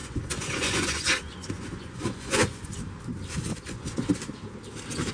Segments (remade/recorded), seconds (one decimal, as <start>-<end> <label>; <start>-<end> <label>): 0.0-2.7 remade; 2.7-3.5 recorded; 3.5-4.1 remade; 4.1-5.1 recorded